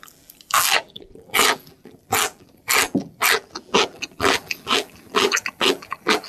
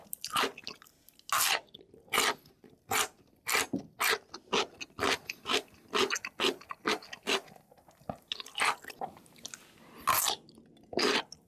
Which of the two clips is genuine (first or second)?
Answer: second